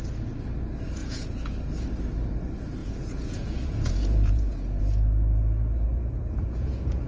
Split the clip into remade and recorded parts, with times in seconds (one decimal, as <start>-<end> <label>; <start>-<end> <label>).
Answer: 0.0-1.0 recorded; 1.0-1.7 remade; 1.7-2.8 recorded; 2.8-4.8 remade; 4.8-5.9 recorded; 5.9-7.1 remade